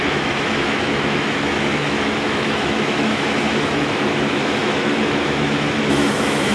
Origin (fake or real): fake